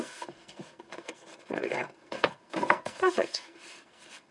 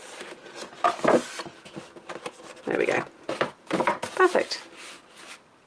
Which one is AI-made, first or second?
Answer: first